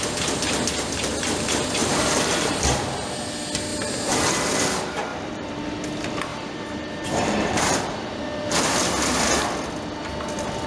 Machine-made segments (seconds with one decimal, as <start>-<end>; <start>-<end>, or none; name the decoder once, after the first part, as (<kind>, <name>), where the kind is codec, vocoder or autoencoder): 1.8-2.7 (vocoder, BigVGAN v2); 5.1-5.6; 6.3-8.2